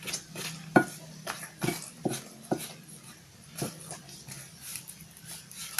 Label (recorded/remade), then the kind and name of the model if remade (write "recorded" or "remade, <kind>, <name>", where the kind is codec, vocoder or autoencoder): recorded